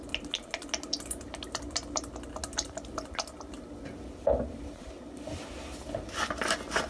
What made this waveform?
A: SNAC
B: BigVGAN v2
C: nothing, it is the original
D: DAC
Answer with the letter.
C